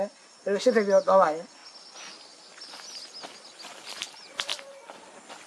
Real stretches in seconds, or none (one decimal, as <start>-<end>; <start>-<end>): 0.0-5.5